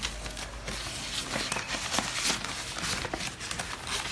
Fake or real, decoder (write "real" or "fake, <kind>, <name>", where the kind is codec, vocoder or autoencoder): real